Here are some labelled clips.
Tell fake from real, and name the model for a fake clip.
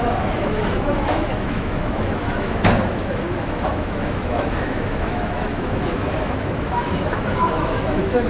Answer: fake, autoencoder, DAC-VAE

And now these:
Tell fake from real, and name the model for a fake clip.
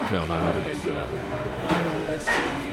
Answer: fake, autoencoder, DAC-VAE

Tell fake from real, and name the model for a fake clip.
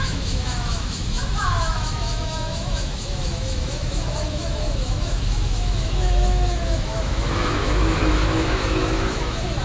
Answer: fake, autoencoder, DAC-VAE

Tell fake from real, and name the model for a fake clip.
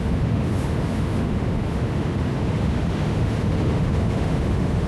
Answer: fake, autoencoder, DAC-VAE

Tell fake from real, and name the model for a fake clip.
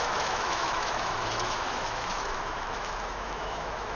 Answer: fake, autoencoder, DAC-VAE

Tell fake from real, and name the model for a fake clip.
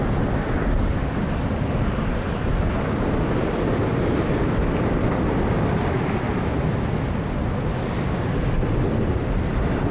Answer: real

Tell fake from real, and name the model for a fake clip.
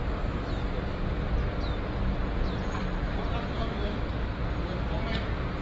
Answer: real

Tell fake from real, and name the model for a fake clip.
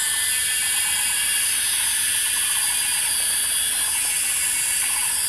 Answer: real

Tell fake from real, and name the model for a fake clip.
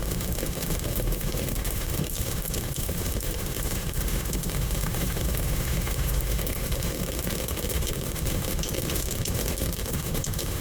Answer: fake, autoencoder, DAC-VAE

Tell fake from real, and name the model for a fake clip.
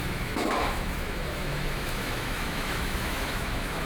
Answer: fake, autoencoder, DAC-VAE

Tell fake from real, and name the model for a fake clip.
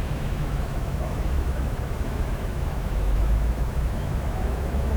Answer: fake, autoencoder, DAC-VAE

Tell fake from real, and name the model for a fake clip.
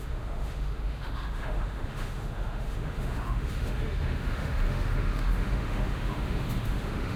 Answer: fake, autoencoder, DAC-VAE